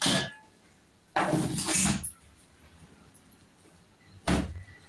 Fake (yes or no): no